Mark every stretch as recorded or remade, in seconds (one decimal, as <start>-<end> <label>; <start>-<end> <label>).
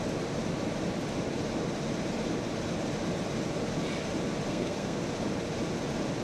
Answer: 0.0-4.5 recorded; 4.5-5.0 remade; 5.0-6.2 recorded